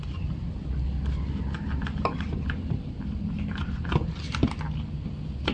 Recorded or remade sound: recorded